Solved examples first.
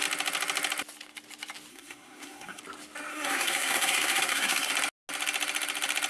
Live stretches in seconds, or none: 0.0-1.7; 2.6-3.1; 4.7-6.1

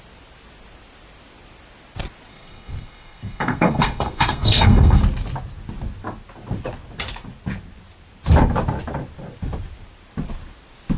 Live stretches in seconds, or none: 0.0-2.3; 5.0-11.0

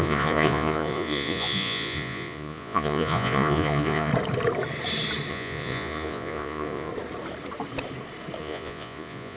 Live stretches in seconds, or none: 4.1-5.3; 6.9-8.4